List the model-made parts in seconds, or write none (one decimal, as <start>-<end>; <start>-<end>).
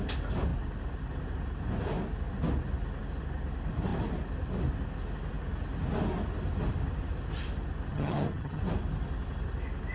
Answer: 7.9-8.6